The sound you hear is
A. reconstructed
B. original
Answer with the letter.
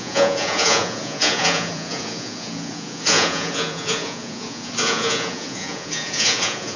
A